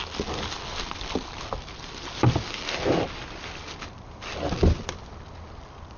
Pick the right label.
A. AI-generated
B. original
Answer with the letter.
B